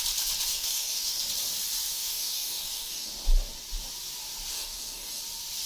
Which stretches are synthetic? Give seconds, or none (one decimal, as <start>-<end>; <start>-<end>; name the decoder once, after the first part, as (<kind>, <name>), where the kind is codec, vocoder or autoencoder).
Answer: 0.5-1.2 (codec, DAC); 1.9-3.1; 4.5-5.2